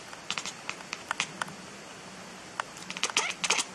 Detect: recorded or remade recorded